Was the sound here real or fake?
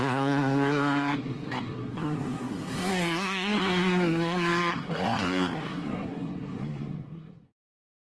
fake